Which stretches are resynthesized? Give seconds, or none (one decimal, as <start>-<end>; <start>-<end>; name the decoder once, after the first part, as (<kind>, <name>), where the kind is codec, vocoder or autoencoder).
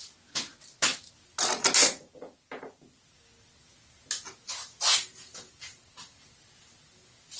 4.9-5.6 (vocoder, Vocos)